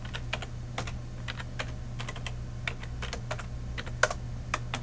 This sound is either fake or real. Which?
real